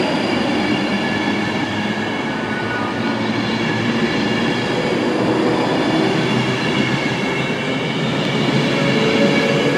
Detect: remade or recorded recorded